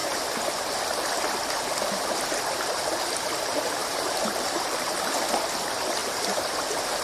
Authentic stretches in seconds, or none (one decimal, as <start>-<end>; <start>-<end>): 0.0-3.8; 5.1-6.0; 6.6-7.0